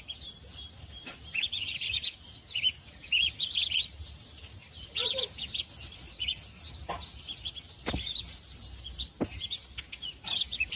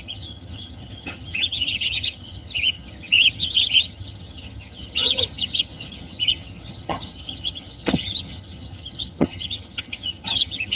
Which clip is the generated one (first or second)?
second